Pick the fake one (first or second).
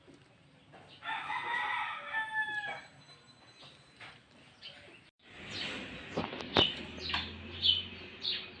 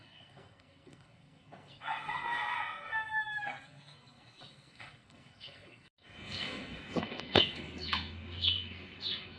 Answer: second